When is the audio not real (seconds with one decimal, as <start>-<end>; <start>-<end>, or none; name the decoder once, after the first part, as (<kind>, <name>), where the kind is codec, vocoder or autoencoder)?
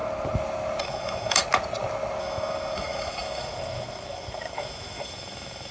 0.8-1.4 (autoencoder, DAC-VAE); 2.2-5.7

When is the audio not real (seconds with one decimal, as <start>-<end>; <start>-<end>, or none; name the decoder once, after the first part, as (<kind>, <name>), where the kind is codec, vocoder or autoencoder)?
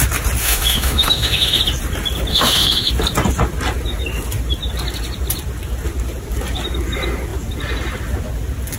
0.4-1.6 (autoencoder, DAC-VAE); 2.3-2.9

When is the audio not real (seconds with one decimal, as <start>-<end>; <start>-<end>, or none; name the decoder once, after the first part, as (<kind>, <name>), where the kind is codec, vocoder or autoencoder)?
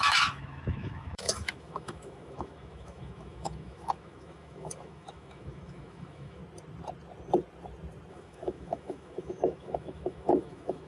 0.0-6.4 (autoencoder, DAC-VAE); 8.1-10.9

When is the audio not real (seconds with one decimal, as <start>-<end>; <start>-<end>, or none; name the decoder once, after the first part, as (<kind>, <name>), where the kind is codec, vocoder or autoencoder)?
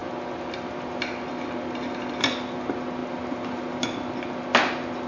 none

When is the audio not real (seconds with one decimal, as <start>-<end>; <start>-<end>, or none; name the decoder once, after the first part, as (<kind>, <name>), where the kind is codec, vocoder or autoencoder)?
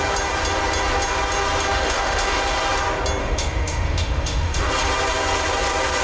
1.7-2.4 (autoencoder, DAC-VAE); 3.2-4.7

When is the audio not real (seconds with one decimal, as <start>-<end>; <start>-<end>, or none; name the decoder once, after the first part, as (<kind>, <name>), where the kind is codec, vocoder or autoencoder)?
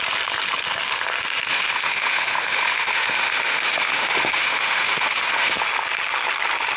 1.5-5.6 (autoencoder, DAC-VAE)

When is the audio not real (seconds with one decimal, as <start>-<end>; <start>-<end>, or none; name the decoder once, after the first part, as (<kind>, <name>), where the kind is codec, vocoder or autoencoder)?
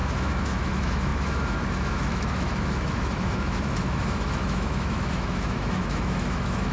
0.0-6.7 (autoencoder, DAC-VAE)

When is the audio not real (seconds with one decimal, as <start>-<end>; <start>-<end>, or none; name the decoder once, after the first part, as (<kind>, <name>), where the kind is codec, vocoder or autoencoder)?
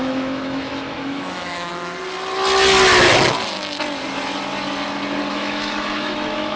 0.0-1.7 (autoencoder, DAC-VAE); 5.3-6.6